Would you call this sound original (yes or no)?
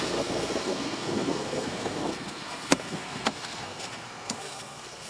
no